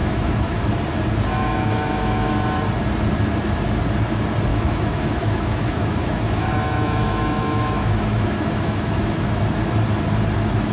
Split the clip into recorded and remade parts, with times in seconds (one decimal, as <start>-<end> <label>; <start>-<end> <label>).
0.0-0.6 remade; 0.6-1.4 recorded; 1.4-2.3 remade; 2.3-4.5 recorded; 4.5-9.4 remade; 9.4-10.7 recorded